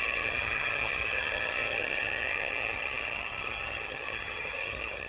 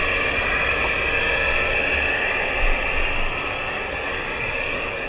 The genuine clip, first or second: second